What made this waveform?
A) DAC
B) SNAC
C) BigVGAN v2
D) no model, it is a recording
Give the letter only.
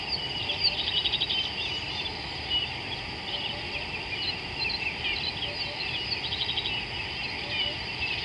D